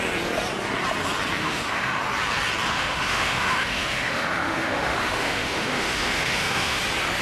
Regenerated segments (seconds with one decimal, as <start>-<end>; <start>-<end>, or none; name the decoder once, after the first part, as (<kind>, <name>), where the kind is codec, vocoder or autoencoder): 1.4-2.0 (autoencoder, DAC-VAE); 2.7-6.8